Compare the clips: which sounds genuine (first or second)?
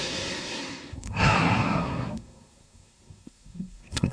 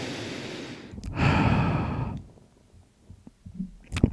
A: second